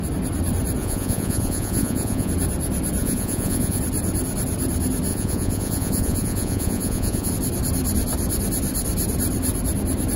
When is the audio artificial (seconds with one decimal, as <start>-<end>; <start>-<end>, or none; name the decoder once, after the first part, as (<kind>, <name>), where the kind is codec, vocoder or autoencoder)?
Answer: 0.8-2.3 (vocoder, Vocos); 3.0-3.8; 5.1-7.3